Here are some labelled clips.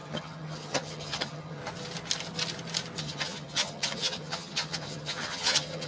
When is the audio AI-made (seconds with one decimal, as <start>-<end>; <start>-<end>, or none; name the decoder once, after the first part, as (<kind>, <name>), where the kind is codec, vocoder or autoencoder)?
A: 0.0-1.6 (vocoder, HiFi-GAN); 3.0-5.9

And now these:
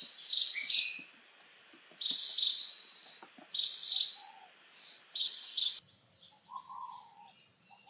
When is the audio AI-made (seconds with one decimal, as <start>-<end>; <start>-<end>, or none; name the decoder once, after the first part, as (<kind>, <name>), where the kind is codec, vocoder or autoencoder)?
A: 5.2-5.7 (vocoder, HiFi-GAN)

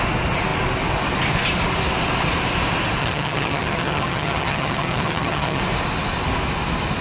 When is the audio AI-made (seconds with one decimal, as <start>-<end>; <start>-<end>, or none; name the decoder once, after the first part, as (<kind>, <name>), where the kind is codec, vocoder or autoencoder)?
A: 3.0-5.6 (vocoder, HiFi-GAN)